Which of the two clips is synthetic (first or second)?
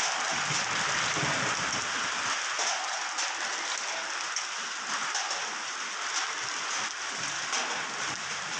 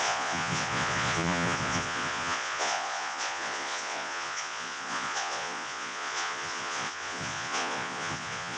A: second